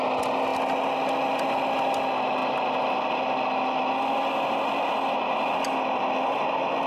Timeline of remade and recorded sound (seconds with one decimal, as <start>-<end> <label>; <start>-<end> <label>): 0.0-6.9 recorded